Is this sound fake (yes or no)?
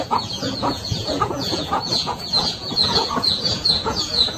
yes